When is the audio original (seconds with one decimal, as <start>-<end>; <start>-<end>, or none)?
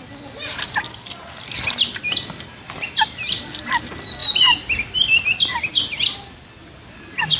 0.0-7.4